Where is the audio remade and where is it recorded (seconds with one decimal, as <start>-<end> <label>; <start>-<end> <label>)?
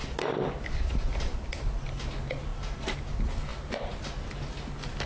0.0-5.1 recorded